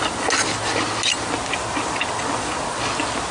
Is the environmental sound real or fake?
real